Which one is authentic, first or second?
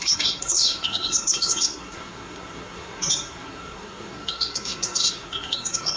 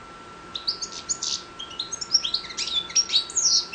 second